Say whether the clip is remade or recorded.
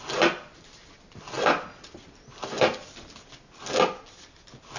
recorded